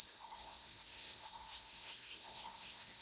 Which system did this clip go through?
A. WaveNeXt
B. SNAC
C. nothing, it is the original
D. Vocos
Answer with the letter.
B